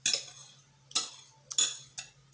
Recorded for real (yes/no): yes